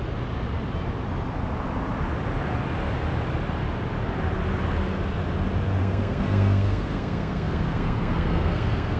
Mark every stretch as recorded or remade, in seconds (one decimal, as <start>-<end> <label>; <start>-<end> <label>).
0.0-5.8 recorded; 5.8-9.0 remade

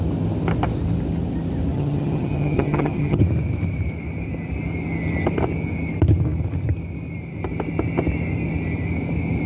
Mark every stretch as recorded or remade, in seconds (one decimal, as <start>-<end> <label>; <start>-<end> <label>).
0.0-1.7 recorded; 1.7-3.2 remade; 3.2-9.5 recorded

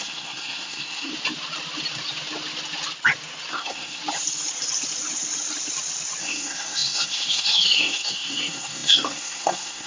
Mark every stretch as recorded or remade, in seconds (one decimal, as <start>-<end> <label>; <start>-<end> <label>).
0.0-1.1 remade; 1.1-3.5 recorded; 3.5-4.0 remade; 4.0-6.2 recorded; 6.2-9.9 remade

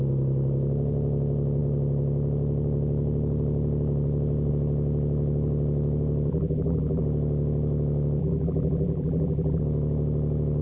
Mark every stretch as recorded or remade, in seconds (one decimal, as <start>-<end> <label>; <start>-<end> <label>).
0.0-6.3 recorded; 6.3-7.0 remade; 7.0-8.2 recorded; 8.2-9.6 remade; 9.6-10.6 recorded

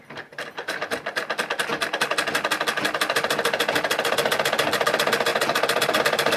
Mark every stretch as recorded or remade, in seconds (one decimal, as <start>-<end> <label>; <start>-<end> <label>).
0.0-6.4 recorded

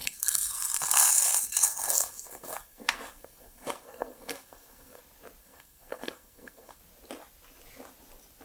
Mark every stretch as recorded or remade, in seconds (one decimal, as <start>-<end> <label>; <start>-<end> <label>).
0.0-5.0 remade; 5.0-5.4 recorded; 5.4-6.8 remade; 6.8-8.4 recorded